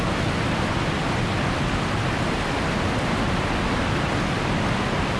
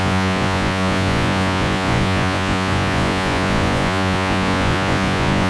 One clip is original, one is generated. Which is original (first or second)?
first